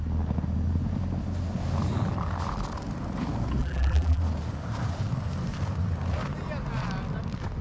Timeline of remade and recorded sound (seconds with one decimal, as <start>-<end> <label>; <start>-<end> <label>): 0.0-3.6 recorded; 3.6-4.2 remade; 4.2-7.6 recorded